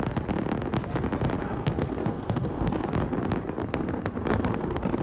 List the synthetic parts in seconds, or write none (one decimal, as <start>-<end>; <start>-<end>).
1.4-2.9; 3.6-5.0